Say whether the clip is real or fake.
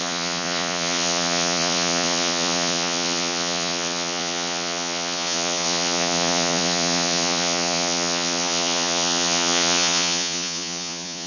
fake